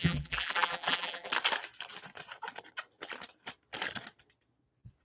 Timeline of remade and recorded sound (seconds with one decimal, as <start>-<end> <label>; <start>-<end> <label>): 0.0-1.3 remade; 1.3-5.0 recorded